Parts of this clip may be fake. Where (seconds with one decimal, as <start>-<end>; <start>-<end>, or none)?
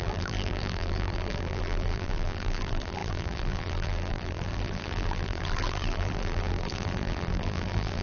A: 0.0-8.0